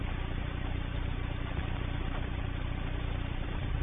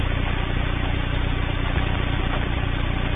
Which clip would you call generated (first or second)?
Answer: first